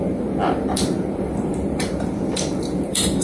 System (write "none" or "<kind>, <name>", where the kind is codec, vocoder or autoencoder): vocoder, BigVGAN v2